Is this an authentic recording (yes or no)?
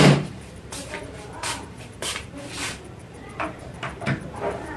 no